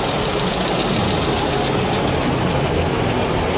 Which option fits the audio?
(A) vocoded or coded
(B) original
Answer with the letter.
B